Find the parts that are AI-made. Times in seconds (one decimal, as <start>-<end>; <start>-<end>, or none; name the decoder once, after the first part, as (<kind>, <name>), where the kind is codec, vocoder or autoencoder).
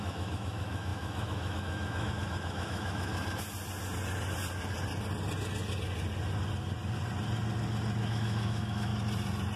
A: 0.0-3.1 (autoencoder, DAC-VAE); 8.0-8.9